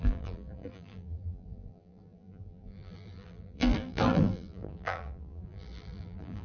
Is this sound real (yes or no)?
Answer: no